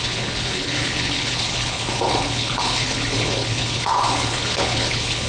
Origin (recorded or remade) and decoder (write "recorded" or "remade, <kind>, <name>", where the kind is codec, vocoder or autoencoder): remade, codec, HILCodec